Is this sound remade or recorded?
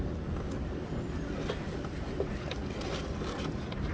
recorded